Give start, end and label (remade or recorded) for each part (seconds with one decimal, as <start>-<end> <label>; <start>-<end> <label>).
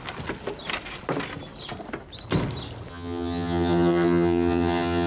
0.0-2.9 recorded; 2.9-5.1 remade